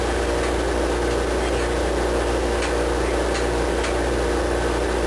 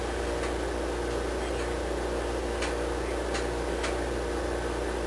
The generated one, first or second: first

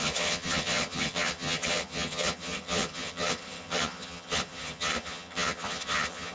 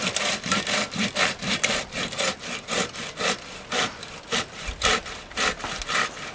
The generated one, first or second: first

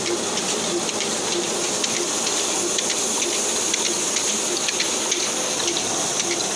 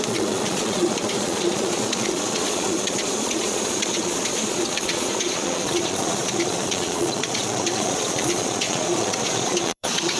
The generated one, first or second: second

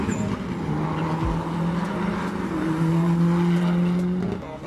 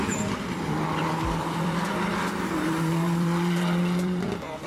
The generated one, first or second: second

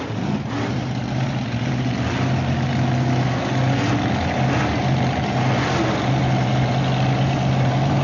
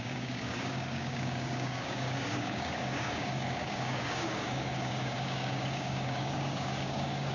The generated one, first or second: second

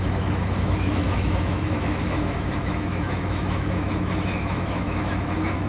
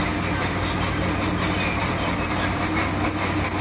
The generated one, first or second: first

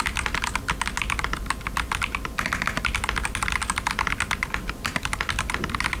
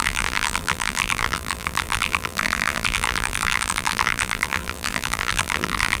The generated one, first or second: second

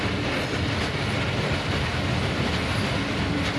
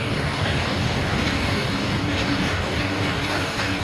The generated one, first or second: second